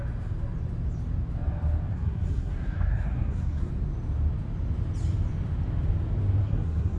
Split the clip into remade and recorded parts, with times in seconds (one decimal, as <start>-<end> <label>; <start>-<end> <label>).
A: 0.0-1.9 recorded; 1.9-3.7 remade; 3.7-6.4 recorded; 6.4-7.0 remade